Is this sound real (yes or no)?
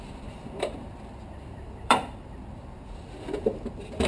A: no